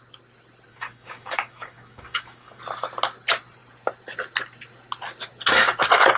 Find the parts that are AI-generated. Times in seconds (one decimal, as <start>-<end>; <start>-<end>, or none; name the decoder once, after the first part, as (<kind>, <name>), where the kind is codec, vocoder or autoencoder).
0.7-2.6 (codec, DAC)